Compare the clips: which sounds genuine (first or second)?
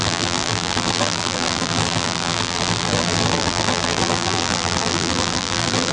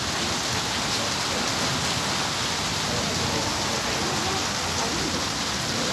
second